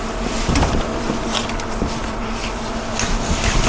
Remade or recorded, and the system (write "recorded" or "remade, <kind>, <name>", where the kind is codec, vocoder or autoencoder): recorded